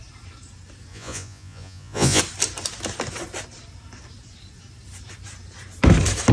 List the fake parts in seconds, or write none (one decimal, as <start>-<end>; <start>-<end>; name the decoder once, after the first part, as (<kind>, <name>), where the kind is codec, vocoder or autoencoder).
0.9-2.2 (vocoder, Vocos)